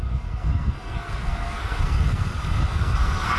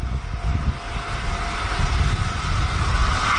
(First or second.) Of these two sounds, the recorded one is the second